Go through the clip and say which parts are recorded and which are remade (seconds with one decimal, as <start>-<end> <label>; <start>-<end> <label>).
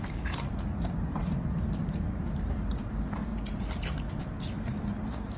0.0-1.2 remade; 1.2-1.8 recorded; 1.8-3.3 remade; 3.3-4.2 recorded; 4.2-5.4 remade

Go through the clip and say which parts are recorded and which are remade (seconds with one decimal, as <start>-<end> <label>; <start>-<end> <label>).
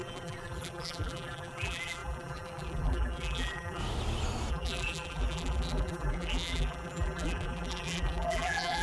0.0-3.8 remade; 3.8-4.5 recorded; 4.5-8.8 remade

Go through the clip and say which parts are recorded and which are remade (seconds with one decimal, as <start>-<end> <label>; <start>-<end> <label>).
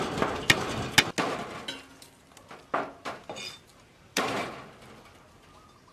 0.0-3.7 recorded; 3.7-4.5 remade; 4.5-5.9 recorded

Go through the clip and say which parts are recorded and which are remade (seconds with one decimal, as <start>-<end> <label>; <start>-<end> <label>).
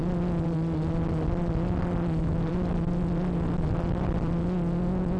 0.0-5.2 recorded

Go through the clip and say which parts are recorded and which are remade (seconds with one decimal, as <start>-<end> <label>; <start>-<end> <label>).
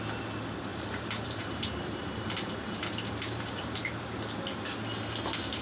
0.0-0.7 recorded; 0.7-4.1 remade; 4.1-5.6 recorded